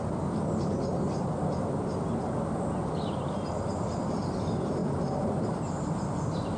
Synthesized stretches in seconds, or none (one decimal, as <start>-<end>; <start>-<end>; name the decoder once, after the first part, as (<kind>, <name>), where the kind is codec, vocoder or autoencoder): none